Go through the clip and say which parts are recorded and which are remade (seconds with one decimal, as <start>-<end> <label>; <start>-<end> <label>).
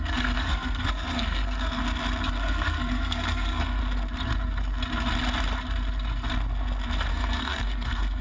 0.0-1.8 remade; 1.8-2.3 recorded; 2.3-3.8 remade; 3.8-7.1 recorded; 7.1-8.2 remade